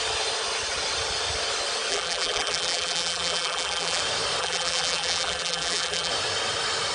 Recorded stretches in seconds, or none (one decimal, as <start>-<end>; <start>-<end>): 0.0-1.9; 4.0-4.4; 6.1-6.9